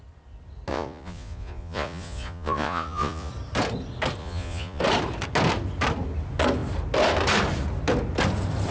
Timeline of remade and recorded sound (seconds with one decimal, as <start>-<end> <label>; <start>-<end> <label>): 0.0-0.7 recorded; 0.7-3.3 remade; 3.3-4.2 recorded; 4.2-4.8 remade; 4.8-8.7 recorded